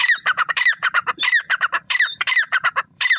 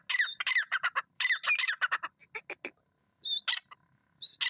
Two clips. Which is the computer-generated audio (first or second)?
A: first